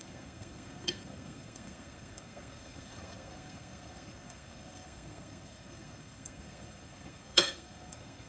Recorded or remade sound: remade